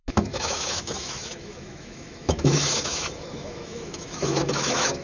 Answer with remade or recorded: remade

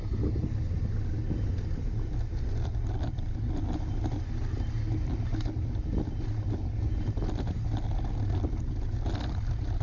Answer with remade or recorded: recorded